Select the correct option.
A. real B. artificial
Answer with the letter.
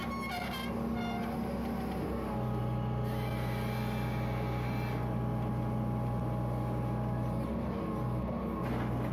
A